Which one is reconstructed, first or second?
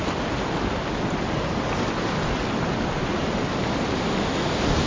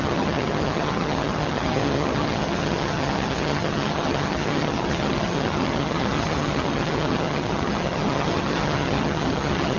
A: second